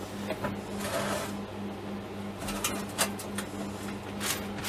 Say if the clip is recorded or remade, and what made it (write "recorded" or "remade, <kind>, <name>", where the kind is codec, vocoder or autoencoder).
recorded